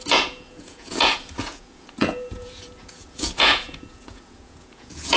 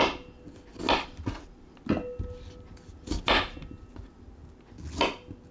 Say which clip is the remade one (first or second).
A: first